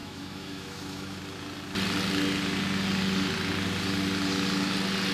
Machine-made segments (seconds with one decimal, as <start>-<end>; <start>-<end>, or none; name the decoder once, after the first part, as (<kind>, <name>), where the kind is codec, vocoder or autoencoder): 0.0-1.2 (autoencoder, DAC-VAE)